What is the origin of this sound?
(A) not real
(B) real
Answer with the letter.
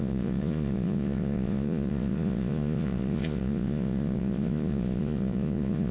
A